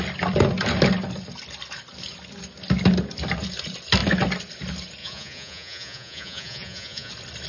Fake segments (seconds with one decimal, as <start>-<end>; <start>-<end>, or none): 5.0-7.1